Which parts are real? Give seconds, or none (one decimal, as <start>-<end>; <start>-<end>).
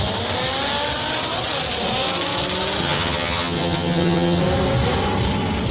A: 0.0-2.8; 4.4-5.7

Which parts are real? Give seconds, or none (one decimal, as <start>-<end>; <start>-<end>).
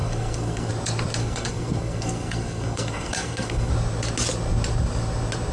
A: 0.7-1.2; 3.7-5.5